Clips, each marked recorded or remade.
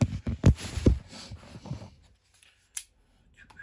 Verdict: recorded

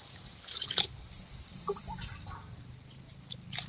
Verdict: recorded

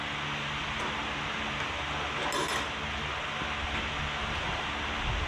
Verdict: recorded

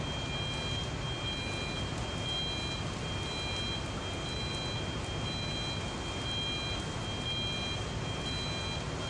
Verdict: recorded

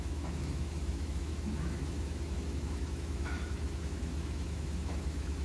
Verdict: remade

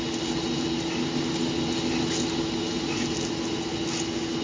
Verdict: recorded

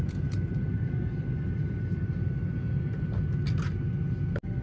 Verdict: recorded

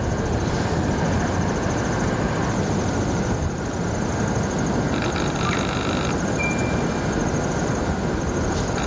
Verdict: recorded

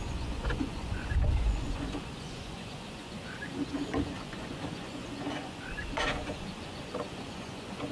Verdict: remade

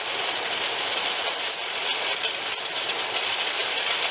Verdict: recorded